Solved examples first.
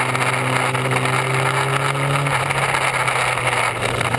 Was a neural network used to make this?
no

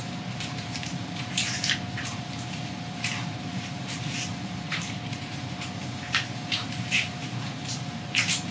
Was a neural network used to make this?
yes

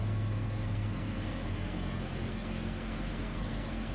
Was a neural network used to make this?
yes